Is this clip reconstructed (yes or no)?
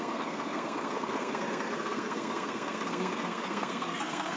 yes